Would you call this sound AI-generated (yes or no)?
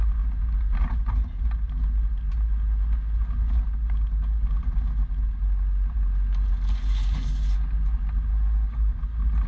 no